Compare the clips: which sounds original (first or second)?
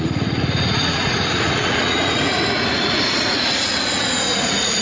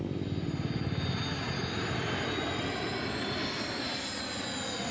second